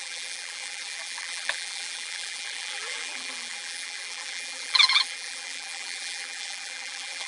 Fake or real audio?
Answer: fake